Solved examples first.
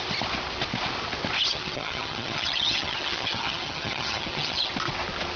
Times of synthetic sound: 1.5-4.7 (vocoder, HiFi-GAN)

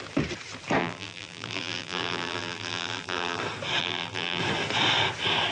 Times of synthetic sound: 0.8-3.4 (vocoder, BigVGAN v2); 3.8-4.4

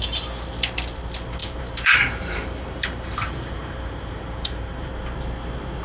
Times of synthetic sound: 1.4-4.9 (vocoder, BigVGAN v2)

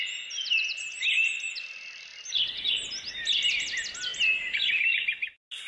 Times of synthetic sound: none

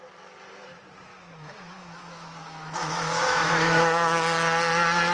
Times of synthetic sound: 1.1-4.2 (autoencoder, DAC-VAE)

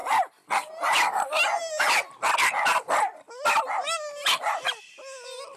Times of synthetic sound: none